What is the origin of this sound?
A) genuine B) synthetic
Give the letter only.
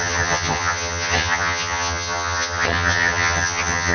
B